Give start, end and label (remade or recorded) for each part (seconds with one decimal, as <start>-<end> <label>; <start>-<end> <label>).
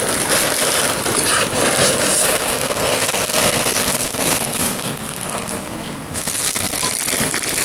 0.0-2.2 recorded; 2.2-6.8 remade; 6.8-7.6 recorded